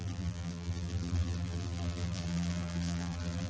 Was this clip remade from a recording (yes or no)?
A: yes